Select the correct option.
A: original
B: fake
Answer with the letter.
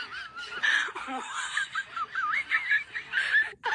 A